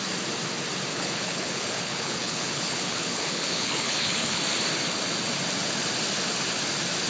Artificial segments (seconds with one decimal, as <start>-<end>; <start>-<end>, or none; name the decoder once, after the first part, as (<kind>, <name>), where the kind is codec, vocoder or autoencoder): 0.9-4.4 (codec, HILCodec)